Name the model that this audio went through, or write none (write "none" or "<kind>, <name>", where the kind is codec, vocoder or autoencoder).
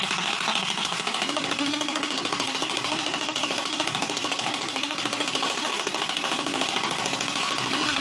codec, SNAC